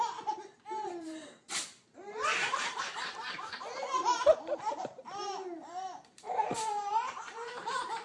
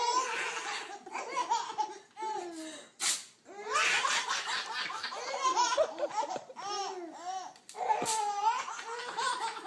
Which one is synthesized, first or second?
first